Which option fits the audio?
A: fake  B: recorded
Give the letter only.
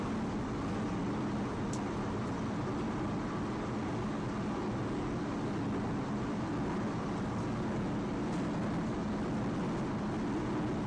B